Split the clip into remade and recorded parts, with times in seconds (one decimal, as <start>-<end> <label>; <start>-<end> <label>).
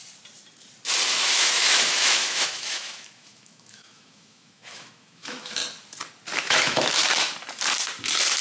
0.0-1.1 recorded; 1.1-5.6 remade; 5.6-6.4 recorded; 6.4-7.0 remade; 7.0-8.4 recorded